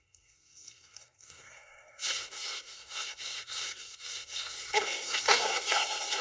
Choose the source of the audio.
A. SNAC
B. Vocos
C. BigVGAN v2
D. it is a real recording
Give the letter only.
A